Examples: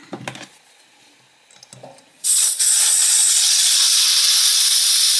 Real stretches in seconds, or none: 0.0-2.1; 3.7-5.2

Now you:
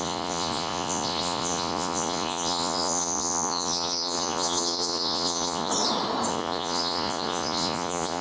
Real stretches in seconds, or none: 5.7-6.3

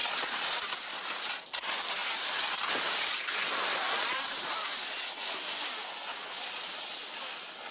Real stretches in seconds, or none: 0.6-4.6; 5.2-6.1; 7.0-7.7

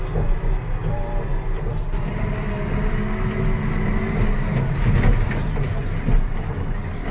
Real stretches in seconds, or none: 0.0-7.1